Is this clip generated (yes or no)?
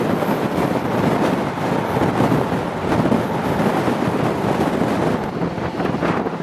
no